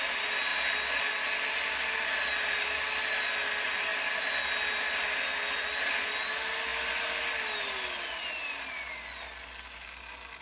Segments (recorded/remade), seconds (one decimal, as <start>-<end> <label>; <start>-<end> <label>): 0.0-10.4 recorded